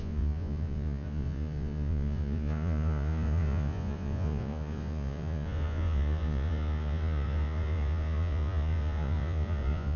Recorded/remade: remade